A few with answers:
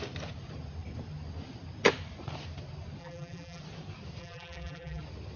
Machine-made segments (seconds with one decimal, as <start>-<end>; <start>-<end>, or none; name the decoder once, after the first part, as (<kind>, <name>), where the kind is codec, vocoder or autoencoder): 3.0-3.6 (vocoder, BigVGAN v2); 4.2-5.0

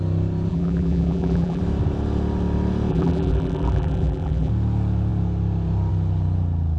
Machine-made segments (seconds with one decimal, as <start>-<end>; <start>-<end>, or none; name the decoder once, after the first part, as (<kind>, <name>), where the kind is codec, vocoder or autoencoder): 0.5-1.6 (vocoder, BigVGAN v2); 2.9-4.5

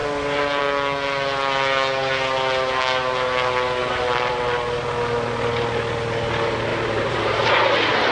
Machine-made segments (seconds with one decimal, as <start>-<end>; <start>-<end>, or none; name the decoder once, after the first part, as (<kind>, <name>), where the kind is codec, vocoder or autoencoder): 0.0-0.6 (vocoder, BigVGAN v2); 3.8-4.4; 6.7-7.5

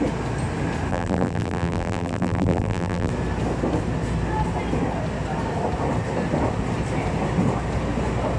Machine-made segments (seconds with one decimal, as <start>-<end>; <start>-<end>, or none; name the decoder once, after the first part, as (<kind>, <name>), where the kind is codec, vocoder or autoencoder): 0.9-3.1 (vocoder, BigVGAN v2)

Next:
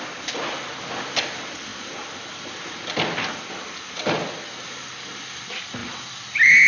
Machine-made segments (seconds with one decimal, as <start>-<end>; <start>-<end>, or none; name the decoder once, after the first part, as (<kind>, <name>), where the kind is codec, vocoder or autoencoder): none

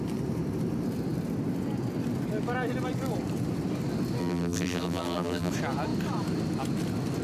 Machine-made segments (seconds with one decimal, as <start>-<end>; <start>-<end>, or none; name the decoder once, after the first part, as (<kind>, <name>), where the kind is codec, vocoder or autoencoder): 4.2-5.5 (vocoder, BigVGAN v2)